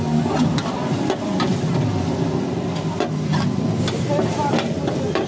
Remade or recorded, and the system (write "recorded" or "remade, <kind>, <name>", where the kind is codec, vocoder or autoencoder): recorded